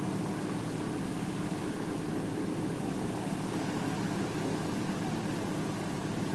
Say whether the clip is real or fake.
real